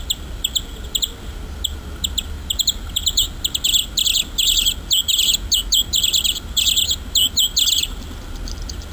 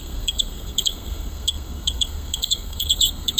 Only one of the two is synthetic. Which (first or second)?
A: second